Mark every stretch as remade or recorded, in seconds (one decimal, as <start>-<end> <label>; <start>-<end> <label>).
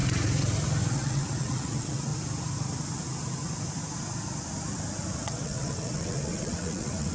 0.0-0.9 recorded; 0.9-2.1 remade; 2.1-5.2 recorded; 5.2-7.1 remade